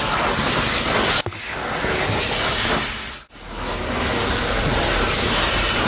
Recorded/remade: recorded